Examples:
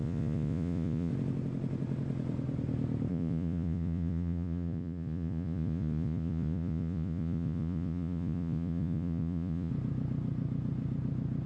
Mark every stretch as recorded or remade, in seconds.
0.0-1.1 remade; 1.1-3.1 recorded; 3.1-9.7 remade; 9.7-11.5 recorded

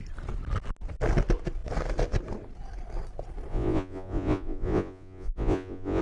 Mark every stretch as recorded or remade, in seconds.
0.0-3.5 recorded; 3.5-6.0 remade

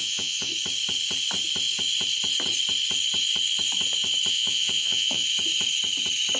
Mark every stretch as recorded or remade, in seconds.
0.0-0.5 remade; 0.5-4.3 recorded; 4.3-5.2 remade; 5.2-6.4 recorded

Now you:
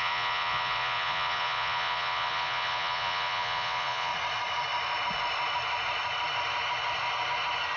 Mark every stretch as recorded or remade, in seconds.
0.0-4.1 remade; 4.1-7.8 recorded